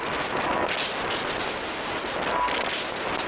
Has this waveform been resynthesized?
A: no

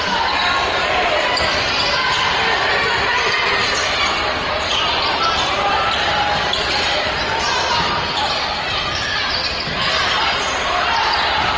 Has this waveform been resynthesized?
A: yes